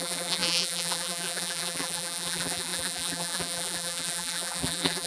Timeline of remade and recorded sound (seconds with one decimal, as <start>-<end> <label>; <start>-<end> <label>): 0.0-5.1 remade